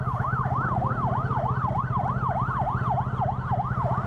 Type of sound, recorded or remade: recorded